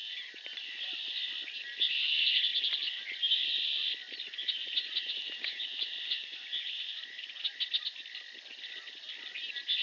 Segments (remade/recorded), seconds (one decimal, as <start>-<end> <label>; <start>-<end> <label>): 0.0-0.7 remade; 0.7-4.6 recorded; 4.6-7.1 remade; 7.1-9.8 recorded